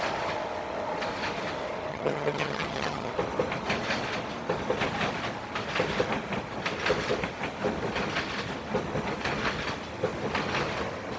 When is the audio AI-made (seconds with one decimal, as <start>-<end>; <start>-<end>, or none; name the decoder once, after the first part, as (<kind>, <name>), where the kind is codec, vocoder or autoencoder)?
1.9-3.1 (vocoder, HiFi-GAN)